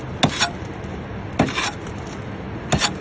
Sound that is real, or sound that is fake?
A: real